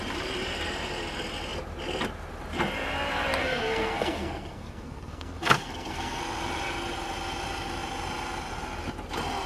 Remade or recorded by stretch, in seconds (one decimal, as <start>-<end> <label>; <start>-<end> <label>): 0.0-3.4 recorded; 3.4-6.2 remade; 6.2-9.5 recorded